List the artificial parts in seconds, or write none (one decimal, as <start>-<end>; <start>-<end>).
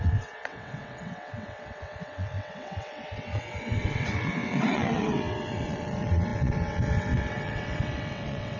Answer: 0.0-8.6